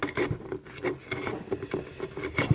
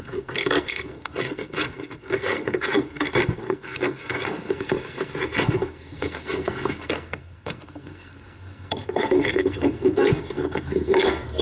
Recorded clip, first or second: first